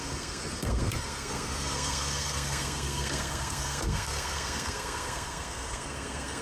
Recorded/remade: remade